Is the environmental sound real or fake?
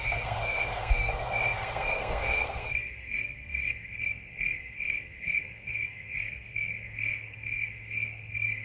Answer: fake